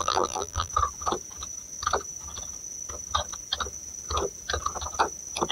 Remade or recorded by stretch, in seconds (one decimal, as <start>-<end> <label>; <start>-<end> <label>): 0.0-0.7 remade; 0.7-5.5 recorded